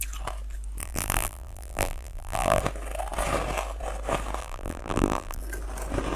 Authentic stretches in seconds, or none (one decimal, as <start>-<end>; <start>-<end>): 0.0-0.8; 2.6-4.4; 5.4-6.2